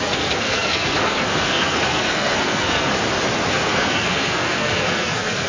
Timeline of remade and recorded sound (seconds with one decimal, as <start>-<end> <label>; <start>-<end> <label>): 0.0-2.9 remade; 2.9-3.5 recorded; 3.5-5.5 remade